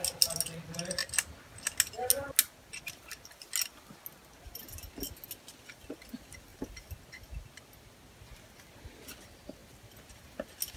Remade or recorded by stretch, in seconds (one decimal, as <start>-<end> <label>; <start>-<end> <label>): 0.0-6.5 recorded; 6.5-7.0 remade; 7.0-10.8 recorded